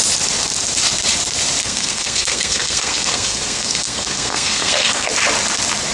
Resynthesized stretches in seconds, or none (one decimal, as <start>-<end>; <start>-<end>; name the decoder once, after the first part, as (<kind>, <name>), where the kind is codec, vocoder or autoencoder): 1.6-5.1 (codec, SNAC)